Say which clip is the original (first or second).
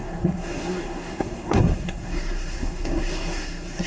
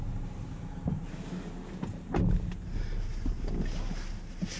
second